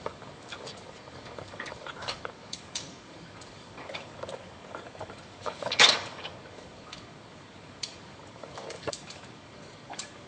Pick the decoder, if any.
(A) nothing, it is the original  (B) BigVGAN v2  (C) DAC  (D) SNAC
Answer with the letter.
C